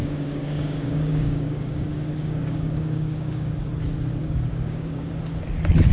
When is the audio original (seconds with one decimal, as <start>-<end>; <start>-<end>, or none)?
3.5-4.2; 5.1-5.9